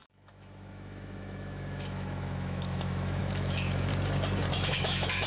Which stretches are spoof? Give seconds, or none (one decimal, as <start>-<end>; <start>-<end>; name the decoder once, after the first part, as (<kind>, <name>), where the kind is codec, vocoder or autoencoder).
0.0-3.9 (autoencoder, DAC-VAE); 4.5-5.3